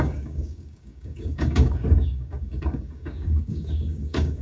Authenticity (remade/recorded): remade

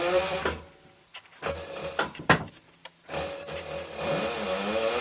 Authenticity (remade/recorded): remade